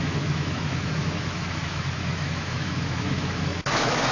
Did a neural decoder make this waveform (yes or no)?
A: yes